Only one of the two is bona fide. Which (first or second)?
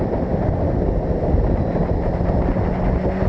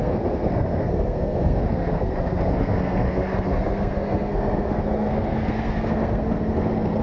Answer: first